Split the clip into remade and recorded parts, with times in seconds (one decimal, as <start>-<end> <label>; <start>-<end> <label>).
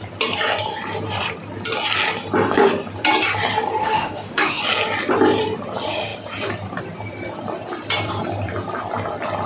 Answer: 0.0-3.8 recorded; 3.8-4.6 remade; 4.6-9.5 recorded